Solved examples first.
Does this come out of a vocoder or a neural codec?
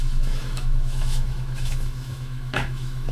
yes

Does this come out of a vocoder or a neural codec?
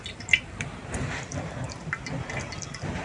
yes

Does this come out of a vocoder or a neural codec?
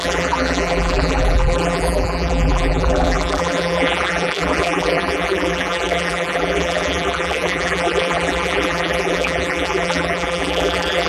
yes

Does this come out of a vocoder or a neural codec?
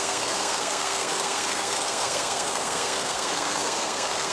yes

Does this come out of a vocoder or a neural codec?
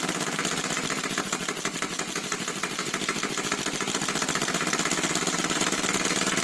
no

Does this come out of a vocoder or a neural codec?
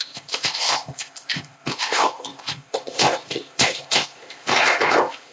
yes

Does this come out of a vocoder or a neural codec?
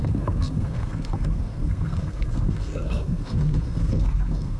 yes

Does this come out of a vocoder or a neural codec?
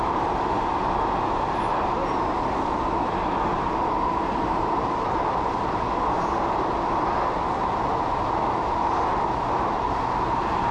no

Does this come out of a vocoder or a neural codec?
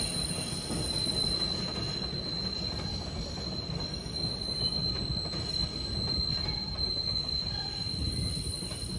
no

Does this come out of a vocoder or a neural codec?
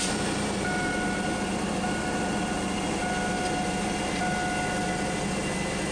no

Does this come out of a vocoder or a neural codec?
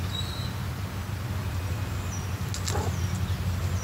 no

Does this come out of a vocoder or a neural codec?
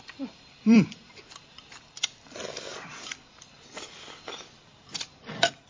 yes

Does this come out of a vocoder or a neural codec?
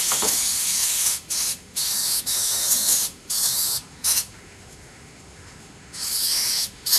yes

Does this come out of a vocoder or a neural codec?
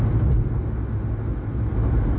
no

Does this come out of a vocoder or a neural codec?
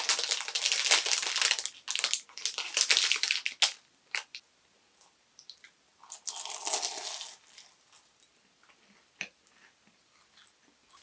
no